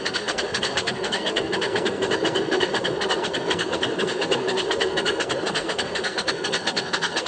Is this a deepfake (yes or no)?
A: yes